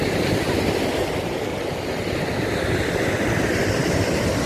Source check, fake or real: real